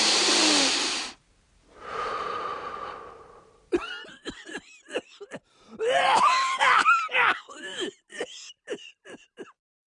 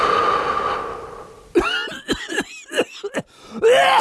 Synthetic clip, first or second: first